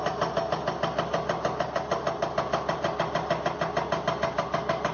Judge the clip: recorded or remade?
recorded